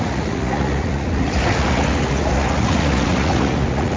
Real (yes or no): no